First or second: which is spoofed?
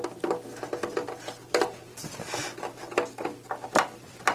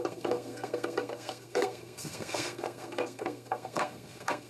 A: second